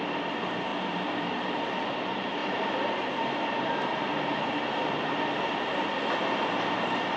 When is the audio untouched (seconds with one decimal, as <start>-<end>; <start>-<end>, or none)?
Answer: 0.0-0.7; 1.6-2.4; 5.1-7.2